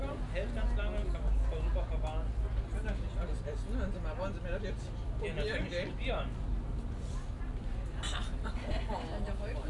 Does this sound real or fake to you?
real